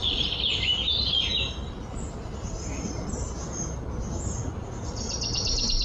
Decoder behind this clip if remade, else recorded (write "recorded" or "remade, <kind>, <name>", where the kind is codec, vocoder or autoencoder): recorded